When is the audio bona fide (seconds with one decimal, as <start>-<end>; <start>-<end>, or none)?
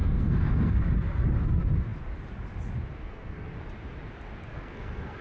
0.8-3.0; 3.5-4.4